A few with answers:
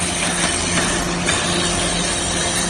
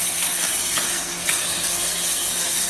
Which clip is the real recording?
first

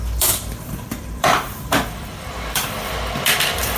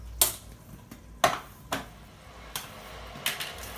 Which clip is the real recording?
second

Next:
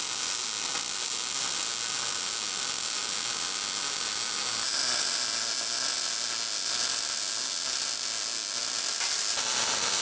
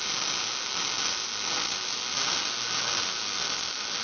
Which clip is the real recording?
first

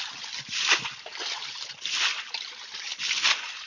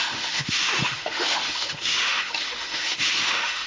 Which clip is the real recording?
first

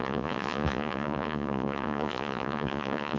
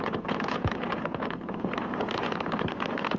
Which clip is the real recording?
second